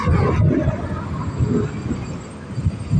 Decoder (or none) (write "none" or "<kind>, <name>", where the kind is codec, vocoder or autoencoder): none